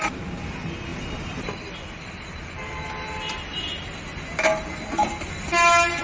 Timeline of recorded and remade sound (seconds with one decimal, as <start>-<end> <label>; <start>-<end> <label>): 0.0-6.0 recorded